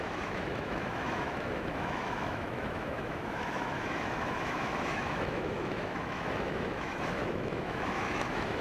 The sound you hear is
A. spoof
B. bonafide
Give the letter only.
A